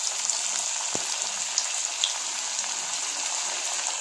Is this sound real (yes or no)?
yes